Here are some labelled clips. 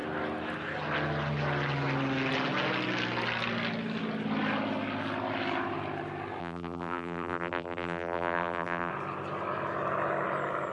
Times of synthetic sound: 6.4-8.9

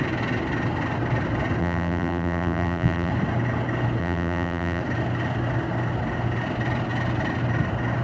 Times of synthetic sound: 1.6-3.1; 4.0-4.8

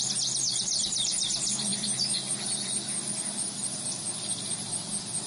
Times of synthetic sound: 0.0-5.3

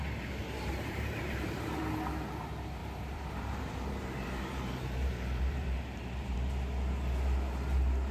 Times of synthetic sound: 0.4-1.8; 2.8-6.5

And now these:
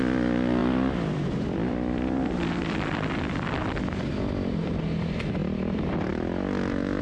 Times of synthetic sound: 0.6-4.8